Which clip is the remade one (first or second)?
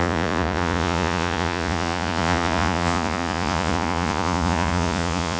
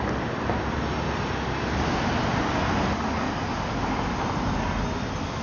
first